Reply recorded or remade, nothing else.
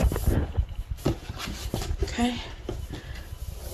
recorded